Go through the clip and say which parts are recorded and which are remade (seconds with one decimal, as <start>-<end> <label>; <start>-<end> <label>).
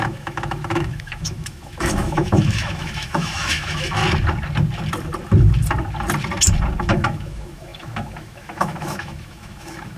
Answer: 0.0-4.0 remade; 4.0-6.8 recorded; 6.8-10.0 remade